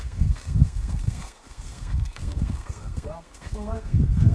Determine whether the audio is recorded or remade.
remade